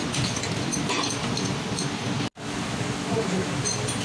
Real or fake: real